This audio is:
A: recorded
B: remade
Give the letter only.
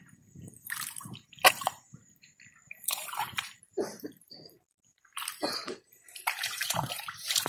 B